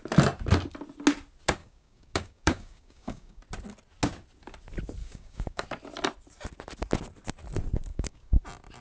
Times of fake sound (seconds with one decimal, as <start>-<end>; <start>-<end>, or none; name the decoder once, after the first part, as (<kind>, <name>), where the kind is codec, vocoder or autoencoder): 1.6-3.4 (codec, DAC); 5.0-5.7; 7.9-8.4